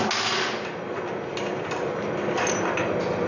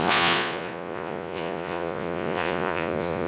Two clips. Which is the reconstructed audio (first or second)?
second